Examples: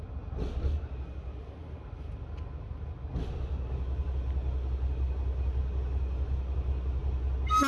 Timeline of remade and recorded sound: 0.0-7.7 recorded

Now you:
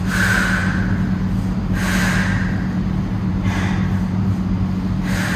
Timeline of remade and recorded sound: 0.0-5.4 recorded

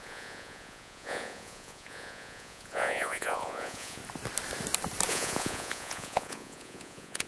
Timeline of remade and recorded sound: 0.0-4.0 remade; 4.0-5.1 recorded; 5.1-7.3 remade

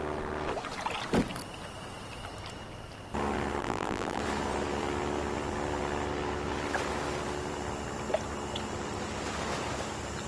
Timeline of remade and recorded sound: 0.0-3.6 recorded; 3.6-4.2 remade; 4.2-10.3 recorded